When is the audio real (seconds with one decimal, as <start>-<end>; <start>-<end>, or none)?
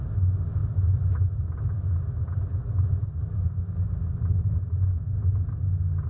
0.0-6.1